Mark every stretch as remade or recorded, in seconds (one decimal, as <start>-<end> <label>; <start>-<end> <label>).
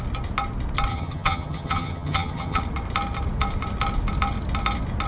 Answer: 0.0-0.9 recorded; 0.9-2.6 remade; 2.6-5.1 recorded